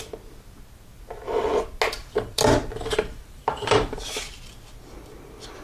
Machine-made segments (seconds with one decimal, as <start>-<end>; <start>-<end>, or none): 2.0-4.2